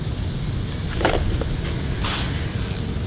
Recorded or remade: recorded